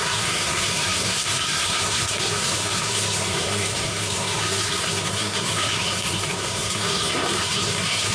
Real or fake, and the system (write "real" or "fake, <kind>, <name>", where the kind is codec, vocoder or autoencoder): fake, codec, SNAC